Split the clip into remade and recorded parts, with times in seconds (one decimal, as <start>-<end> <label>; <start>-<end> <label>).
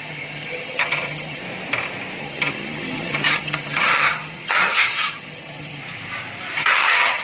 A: 0.0-1.4 remade; 1.4-2.2 recorded; 2.2-5.8 remade; 5.8-6.6 recorded; 6.6-7.2 remade